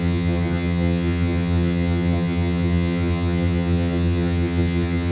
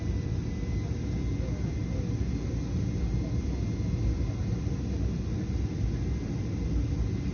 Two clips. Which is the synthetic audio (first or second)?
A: first